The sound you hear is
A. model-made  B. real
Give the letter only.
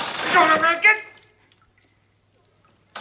B